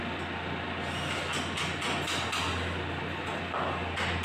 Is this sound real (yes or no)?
yes